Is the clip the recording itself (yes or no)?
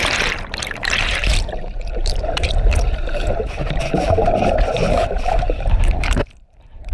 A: no